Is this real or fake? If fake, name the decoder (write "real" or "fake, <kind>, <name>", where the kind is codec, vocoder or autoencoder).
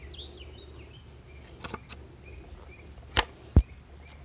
real